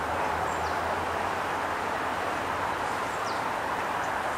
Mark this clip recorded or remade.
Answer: remade